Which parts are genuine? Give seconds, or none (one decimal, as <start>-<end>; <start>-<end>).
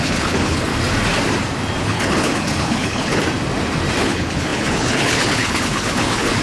0.7-1.8; 3.2-4.0